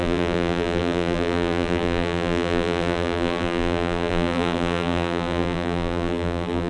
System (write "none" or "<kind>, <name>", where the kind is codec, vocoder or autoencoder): vocoder, BigVGAN v2